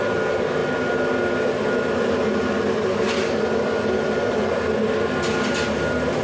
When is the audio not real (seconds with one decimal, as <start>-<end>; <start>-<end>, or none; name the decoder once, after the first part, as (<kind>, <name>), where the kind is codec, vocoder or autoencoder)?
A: none